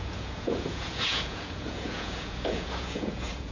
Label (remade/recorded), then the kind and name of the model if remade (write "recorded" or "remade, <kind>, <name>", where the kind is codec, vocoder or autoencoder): remade, vocoder, Vocos